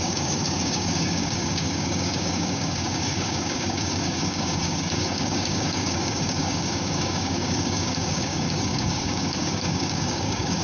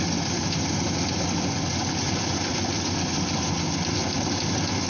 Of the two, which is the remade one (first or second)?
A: first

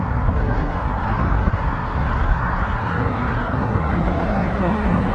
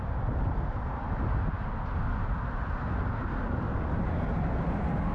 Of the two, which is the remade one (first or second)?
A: first